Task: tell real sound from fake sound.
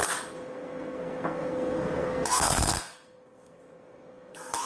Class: fake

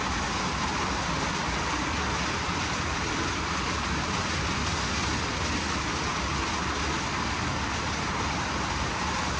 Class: real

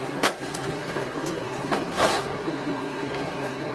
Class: fake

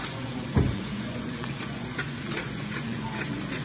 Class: fake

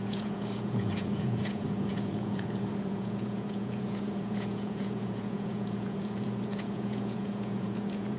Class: fake